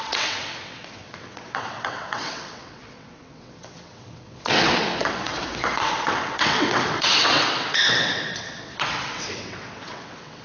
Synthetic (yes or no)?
yes